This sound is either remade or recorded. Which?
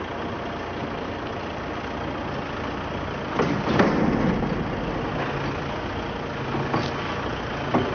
recorded